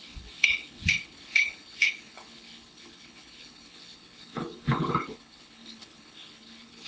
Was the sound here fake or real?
fake